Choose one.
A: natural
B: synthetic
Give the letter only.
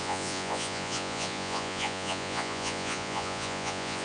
B